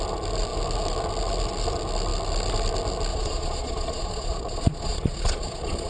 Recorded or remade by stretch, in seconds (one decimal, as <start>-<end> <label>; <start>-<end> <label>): 0.0-3.1 recorded; 3.1-5.9 remade